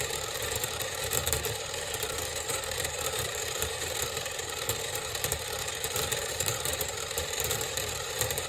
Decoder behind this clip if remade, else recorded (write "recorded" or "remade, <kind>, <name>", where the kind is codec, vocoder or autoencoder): remade, vocoder, BigVGAN v2